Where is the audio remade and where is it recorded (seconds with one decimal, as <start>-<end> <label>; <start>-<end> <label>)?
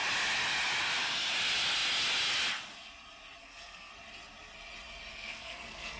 0.0-3.4 recorded; 3.4-3.9 remade; 3.9-5.1 recorded; 5.1-6.0 remade